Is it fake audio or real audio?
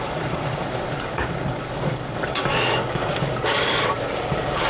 fake